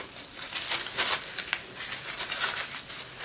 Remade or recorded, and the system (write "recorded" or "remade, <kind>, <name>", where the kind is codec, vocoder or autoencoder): recorded